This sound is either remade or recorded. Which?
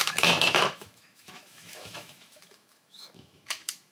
remade